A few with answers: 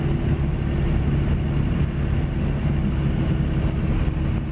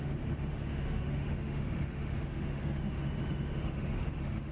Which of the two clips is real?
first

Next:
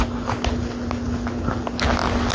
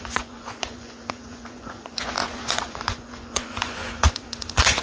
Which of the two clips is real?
first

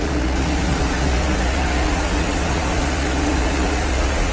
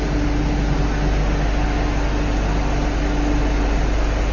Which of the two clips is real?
second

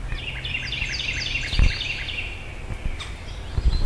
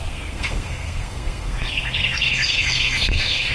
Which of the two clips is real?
first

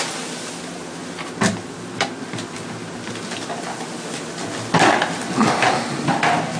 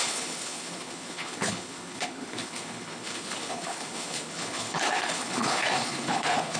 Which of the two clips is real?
first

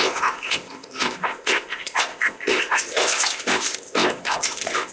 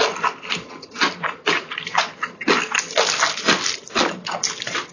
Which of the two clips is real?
second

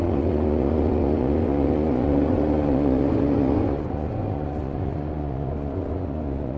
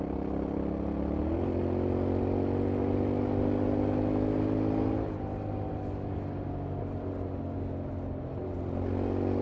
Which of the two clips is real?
second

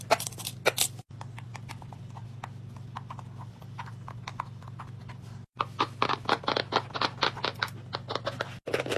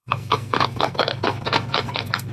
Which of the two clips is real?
first